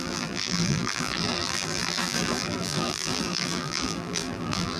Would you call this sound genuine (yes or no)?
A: no